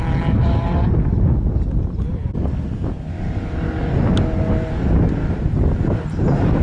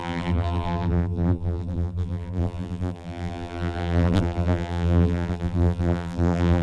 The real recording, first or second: first